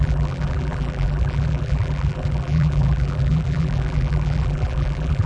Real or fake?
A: fake